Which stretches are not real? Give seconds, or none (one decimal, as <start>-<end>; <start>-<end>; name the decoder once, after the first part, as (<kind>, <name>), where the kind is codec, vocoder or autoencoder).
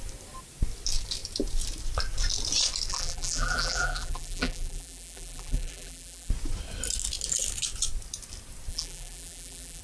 2.9-6.3 (vocoder, BigVGAN v2); 8.7-9.8